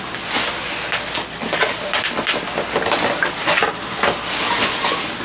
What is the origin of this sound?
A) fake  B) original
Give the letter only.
B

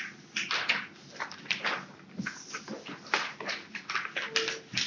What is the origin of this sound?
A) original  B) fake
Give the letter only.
A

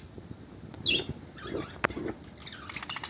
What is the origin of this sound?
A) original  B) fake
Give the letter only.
A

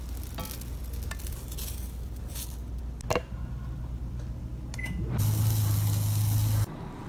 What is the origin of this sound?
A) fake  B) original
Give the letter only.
B